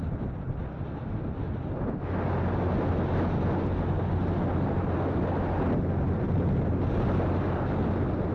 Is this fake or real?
real